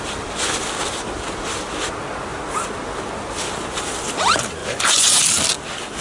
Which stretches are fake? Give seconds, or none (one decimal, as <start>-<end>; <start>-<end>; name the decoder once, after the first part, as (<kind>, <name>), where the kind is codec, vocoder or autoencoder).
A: 4.6-5.2 (vocoder, Vocos)